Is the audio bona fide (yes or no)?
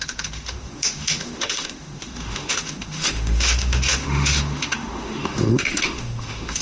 no